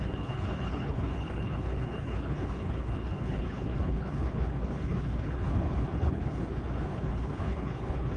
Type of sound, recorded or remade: remade